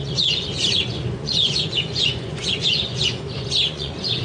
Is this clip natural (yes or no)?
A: no